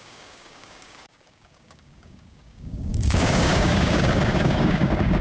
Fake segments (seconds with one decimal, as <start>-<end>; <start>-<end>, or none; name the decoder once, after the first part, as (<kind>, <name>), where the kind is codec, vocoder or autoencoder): 0.0-5.2 (codec, DAC)